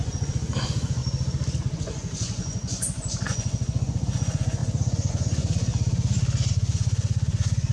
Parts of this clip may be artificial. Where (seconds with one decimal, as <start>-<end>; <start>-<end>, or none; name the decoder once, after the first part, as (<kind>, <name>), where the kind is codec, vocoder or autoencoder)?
0.0-1.0 (vocoder, Vocos); 1.6-5.7; 6.5-7.7